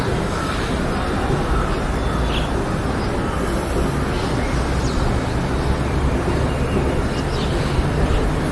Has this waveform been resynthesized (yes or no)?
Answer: no